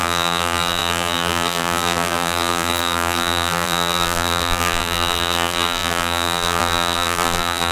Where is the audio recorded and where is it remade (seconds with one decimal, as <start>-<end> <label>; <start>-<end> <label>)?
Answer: 0.0-7.7 remade